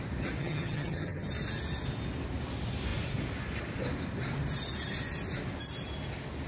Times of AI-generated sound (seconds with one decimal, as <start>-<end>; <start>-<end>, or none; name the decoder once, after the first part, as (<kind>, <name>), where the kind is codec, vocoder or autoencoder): 0.4-1.3 (vocoder, HiFi-GAN)